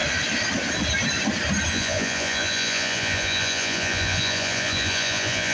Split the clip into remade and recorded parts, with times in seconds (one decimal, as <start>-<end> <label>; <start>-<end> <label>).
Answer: 0.0-1.7 recorded; 1.7-5.5 remade